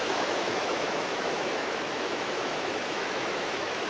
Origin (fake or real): fake